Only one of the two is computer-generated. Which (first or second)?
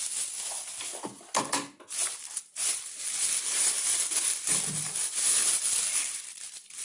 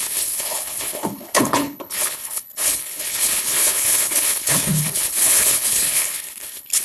second